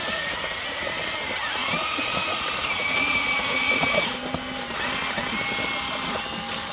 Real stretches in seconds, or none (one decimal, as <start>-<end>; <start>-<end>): 0.9-1.6; 4.2-6.7